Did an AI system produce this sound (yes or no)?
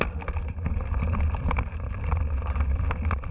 no